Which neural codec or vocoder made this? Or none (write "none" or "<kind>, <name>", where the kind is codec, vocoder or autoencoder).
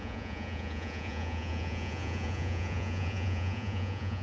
vocoder, Vocos